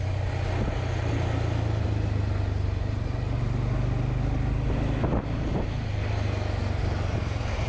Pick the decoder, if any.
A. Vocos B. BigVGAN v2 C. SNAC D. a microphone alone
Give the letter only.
D